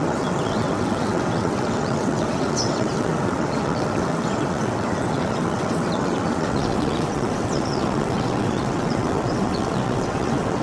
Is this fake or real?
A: fake